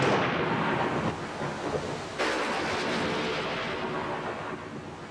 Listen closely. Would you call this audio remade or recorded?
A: recorded